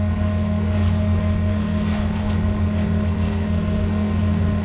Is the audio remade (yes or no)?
yes